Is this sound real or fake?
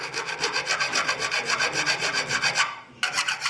real